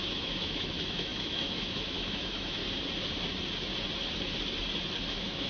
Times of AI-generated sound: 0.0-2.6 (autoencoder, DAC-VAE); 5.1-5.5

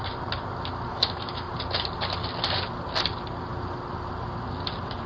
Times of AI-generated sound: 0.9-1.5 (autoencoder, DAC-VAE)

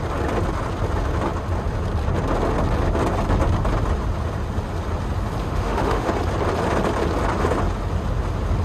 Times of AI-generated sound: 5.4-6.1 (autoencoder, DAC-VAE)

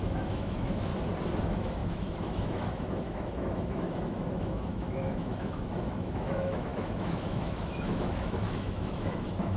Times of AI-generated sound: 0.0-0.9 (autoencoder, DAC-VAE); 1.4-9.6

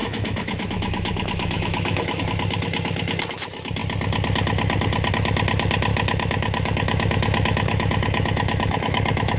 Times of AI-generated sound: 0.0-2.2 (autoencoder, DAC-VAE); 5.9-9.4